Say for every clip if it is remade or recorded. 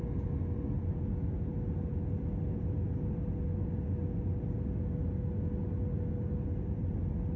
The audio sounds recorded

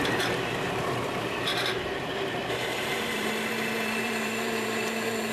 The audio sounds remade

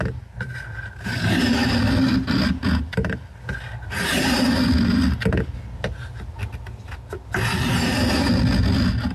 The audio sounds recorded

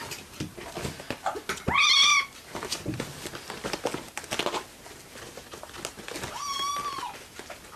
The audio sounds recorded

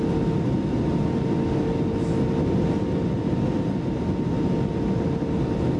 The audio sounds recorded